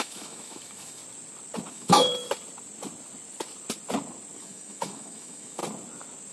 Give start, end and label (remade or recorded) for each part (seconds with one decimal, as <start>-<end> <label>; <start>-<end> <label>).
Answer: 0.0-1.0 remade; 1.0-1.7 recorded; 1.7-2.1 remade; 2.1-4.4 recorded; 4.4-5.6 remade; 5.6-6.3 recorded